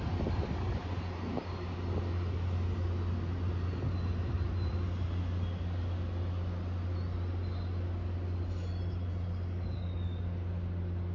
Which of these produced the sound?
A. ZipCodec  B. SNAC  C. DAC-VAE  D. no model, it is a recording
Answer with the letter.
D